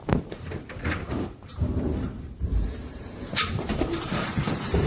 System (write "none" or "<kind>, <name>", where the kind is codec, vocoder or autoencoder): vocoder, BigVGAN v2